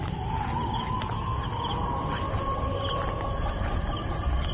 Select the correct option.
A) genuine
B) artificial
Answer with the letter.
A